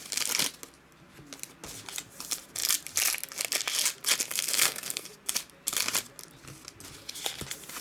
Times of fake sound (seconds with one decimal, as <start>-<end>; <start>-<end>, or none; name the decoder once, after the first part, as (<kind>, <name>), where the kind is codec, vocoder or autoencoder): 4.3-5.1 (codec, SNAC)